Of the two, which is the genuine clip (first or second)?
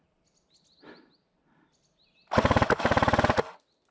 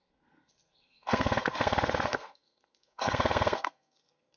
first